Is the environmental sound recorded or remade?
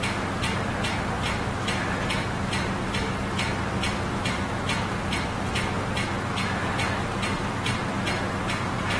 recorded